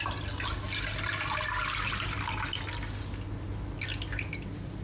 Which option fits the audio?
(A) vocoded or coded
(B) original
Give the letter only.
B